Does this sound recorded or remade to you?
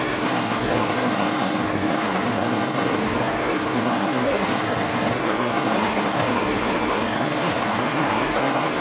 remade